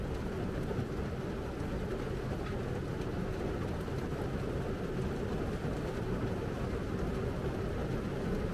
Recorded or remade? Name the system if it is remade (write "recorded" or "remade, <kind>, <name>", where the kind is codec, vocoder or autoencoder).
recorded